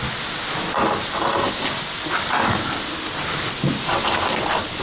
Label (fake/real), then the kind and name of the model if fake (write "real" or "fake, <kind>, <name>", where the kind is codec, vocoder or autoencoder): real